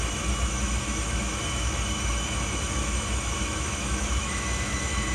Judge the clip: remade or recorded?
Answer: remade